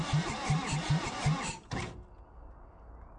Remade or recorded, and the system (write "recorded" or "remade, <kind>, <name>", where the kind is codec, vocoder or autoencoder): recorded